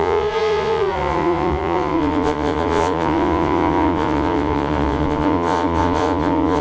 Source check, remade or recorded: remade